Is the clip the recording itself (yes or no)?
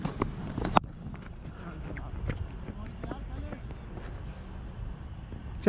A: yes